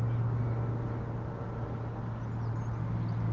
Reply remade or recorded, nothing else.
recorded